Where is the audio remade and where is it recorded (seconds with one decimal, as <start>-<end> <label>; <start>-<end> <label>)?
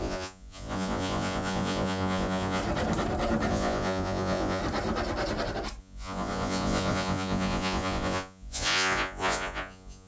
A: 0.0-2.6 remade; 2.6-3.5 recorded; 3.5-4.6 remade; 4.6-5.8 recorded; 5.8-10.1 remade